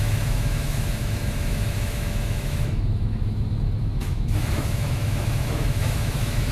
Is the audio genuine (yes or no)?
no